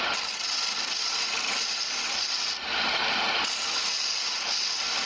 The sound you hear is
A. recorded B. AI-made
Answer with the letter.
A